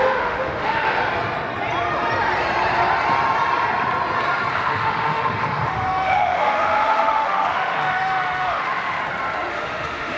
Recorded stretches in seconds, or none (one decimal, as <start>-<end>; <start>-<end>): 1.0-4.5; 9.0-9.5